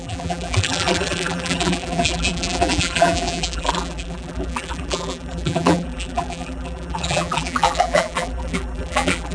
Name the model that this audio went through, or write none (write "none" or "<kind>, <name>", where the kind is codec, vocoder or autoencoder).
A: vocoder, BigVGAN v2